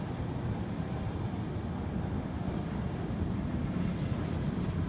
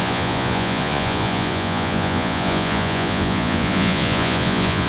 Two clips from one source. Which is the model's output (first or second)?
second